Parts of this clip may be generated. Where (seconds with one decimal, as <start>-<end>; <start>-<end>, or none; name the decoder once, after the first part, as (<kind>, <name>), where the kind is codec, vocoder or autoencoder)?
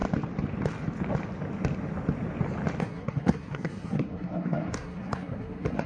2.8-5.9 (codec, SNAC)